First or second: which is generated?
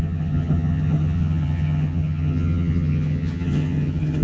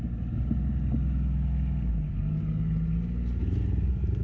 first